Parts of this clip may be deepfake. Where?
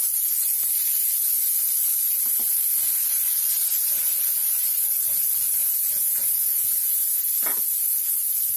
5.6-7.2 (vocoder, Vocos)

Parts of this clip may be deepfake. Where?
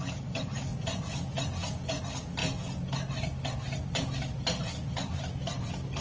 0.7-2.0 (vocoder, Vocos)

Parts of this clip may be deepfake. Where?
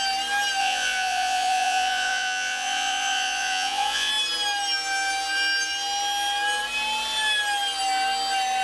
0.6-4.1 (vocoder, Vocos)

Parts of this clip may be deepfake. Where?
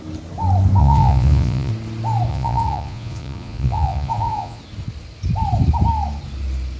0.8-1.7 (vocoder, Vocos); 2.3-4.6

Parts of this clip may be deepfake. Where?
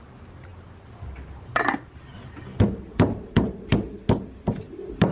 none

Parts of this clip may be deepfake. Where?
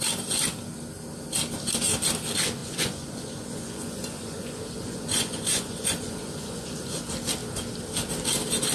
2.6-7.0 (vocoder, Vocos)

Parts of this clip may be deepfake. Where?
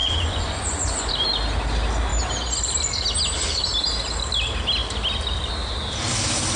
0.0-1.1 (vocoder, Vocos)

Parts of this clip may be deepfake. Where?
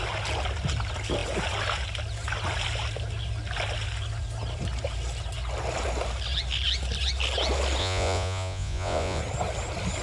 7.8-9.2 (vocoder, Vocos)